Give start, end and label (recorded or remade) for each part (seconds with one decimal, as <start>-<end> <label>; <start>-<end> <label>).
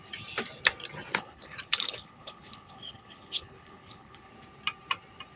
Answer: 0.0-1.1 recorded; 1.1-4.3 remade; 4.3-5.4 recorded